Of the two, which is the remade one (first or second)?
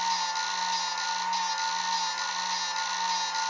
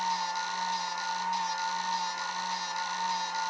second